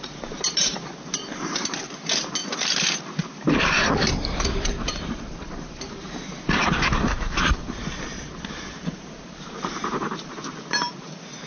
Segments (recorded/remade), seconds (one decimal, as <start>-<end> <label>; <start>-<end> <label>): 0.0-2.4 remade; 2.4-3.0 recorded; 3.0-11.5 remade